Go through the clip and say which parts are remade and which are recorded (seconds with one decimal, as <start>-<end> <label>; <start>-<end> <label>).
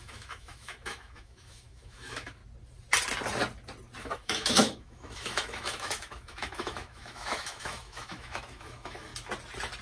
0.0-2.4 remade; 2.4-4.0 recorded; 4.0-9.1 remade; 9.1-9.8 recorded